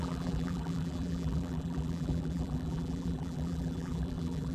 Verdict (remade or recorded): remade